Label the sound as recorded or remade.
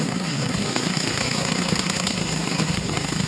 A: remade